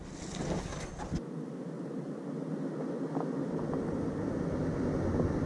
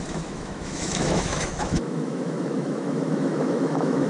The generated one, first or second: second